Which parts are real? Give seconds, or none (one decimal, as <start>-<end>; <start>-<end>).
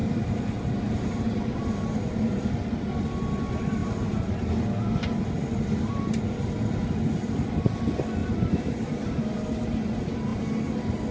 2.5-3.8; 4.3-8.2; 9.1-11.1